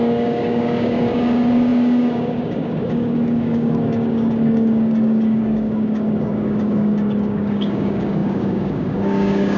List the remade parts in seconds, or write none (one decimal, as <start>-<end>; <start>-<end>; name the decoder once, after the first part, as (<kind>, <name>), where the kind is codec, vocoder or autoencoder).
0.0-9.6 (codec, DAC)